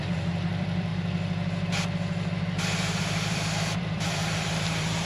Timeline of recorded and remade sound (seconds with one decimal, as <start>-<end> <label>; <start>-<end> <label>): 0.0-0.9 remade; 0.9-3.0 recorded; 3.0-5.1 remade